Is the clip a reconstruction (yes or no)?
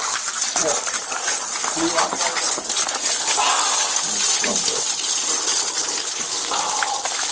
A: no